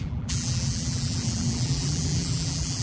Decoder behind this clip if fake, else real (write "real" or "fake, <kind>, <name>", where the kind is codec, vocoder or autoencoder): fake, vocoder, BigVGAN v2